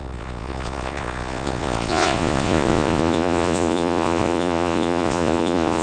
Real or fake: fake